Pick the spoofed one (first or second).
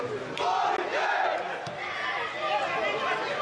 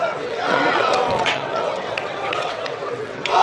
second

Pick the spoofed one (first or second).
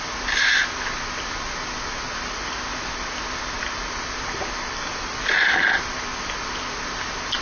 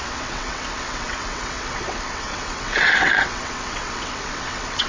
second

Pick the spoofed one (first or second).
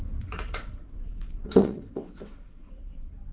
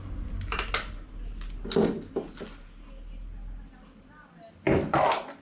first